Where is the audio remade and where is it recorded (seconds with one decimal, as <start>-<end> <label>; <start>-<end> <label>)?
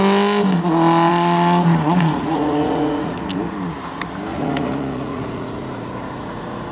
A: 0.0-1.1 recorded; 1.1-3.2 remade; 3.2-4.3 recorded; 4.3-6.7 remade